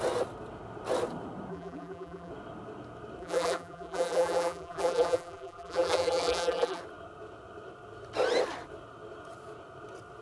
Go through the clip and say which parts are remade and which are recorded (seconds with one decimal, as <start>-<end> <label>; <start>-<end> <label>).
0.0-1.5 recorded; 1.5-2.3 remade; 2.3-3.2 recorded; 3.2-6.8 remade; 6.8-10.2 recorded